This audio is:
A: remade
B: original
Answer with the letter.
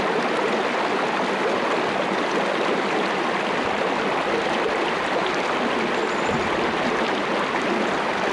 B